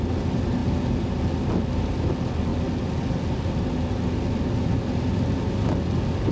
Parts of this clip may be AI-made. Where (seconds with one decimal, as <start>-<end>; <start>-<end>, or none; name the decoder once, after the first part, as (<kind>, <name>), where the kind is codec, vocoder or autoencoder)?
none